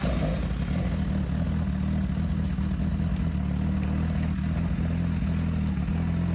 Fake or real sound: real